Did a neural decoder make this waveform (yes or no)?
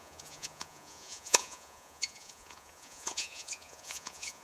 yes